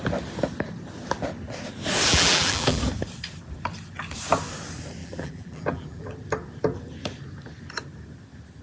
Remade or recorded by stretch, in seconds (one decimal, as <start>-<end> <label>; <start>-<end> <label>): 0.0-2.1 recorded; 2.1-2.8 remade; 2.8-5.0 recorded; 5.0-6.1 remade; 6.1-8.6 recorded